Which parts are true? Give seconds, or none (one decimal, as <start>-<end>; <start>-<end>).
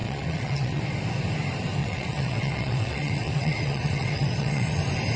0.8-1.8; 4.8-5.2